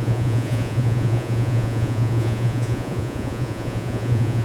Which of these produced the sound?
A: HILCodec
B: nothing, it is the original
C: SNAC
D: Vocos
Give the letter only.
D